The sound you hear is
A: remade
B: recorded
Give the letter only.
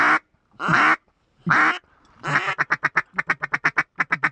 B